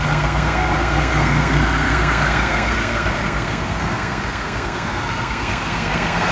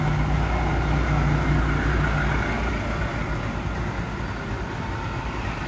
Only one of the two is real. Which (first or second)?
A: second